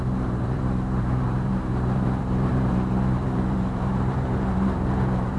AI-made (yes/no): yes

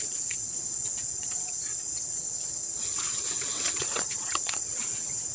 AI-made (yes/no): yes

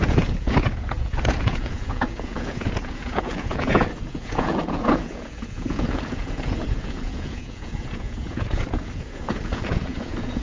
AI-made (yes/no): yes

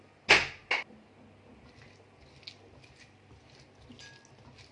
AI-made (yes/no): no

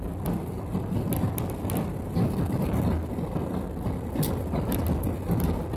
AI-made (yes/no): no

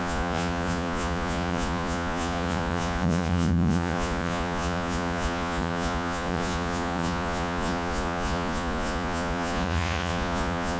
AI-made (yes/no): yes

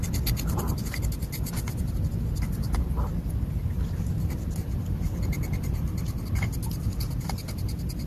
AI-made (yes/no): no